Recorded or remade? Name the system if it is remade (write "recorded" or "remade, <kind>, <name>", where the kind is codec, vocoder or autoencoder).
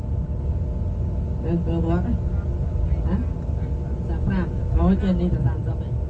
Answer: recorded